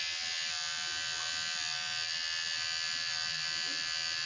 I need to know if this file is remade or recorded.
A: recorded